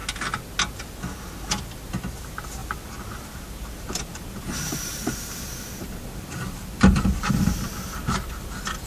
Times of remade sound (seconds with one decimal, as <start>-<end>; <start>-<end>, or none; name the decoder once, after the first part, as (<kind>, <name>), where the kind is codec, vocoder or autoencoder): 2.6-7.3 (vocoder, BigVGAN v2)